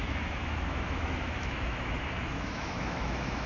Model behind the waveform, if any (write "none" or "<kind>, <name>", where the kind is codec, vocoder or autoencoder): autoencoder, DAC-VAE